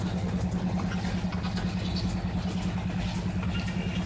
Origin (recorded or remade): recorded